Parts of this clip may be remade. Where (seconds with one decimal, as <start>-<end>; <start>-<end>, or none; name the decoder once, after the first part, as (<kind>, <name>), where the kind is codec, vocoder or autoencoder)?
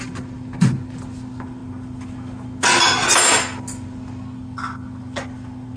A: none